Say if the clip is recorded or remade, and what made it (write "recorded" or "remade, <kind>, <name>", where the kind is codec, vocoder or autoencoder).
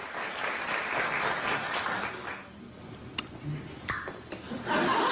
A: recorded